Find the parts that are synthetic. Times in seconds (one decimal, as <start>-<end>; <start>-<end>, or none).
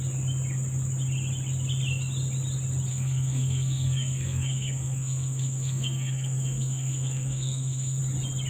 2.9-8.0